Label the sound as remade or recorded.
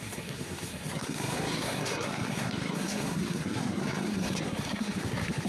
remade